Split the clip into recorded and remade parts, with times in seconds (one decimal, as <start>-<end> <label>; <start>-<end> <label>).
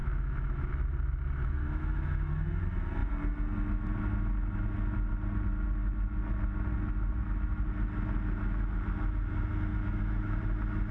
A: 0.0-0.7 remade; 0.7-1.6 recorded; 1.6-2.3 remade; 2.3-9.7 recorded; 9.7-10.4 remade; 10.4-10.9 recorded